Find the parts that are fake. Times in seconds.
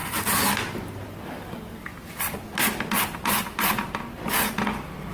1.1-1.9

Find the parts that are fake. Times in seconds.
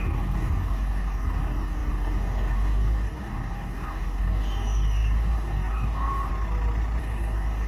0.0-6.3; 7.0-7.7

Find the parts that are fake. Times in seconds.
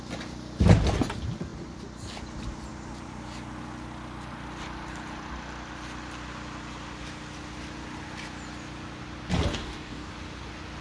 9.5-10.1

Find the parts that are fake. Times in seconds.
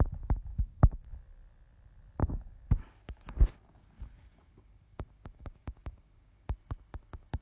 0.5-1.1; 2.2-6.6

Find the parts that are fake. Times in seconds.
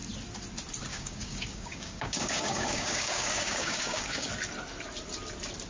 0.9-4.3